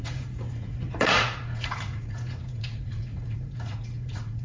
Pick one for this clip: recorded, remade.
remade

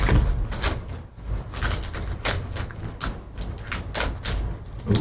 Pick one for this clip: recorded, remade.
recorded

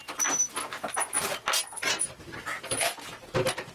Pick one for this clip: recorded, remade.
recorded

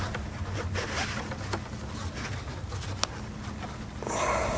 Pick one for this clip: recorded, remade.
recorded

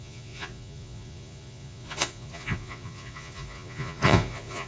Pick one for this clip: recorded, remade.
remade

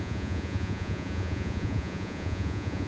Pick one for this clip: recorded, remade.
remade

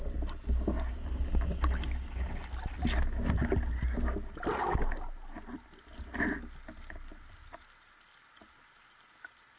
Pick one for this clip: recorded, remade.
recorded